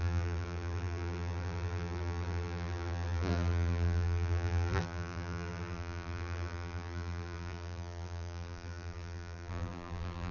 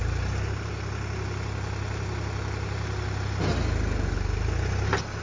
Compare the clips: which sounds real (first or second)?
second